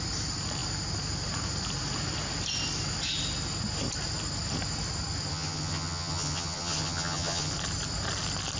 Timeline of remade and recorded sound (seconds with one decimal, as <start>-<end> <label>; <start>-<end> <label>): 0.0-5.3 recorded; 5.3-7.5 remade; 7.5-8.6 recorded